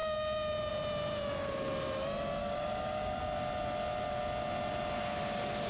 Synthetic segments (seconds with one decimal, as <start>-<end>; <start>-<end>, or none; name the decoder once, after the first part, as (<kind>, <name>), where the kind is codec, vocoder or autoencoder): 2.4-3.2 (codec, DAC)